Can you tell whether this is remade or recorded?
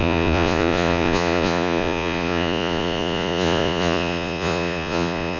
remade